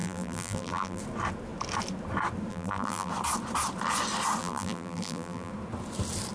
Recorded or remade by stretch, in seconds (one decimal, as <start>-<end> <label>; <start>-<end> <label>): 0.0-1.0 remade; 1.0-2.5 recorded; 2.5-3.1 remade; 3.1-4.4 recorded; 4.4-5.5 remade; 5.5-6.3 recorded